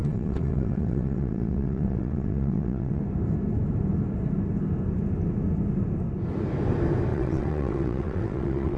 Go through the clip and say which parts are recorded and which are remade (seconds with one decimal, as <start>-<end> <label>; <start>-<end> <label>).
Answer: 0.0-3.0 remade; 3.0-7.1 recorded; 7.1-8.8 remade